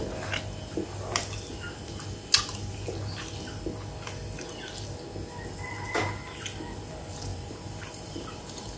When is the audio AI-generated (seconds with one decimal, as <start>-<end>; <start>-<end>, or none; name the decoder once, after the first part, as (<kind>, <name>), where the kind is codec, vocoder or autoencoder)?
7.3-8.8 (vocoder, BigVGAN v2)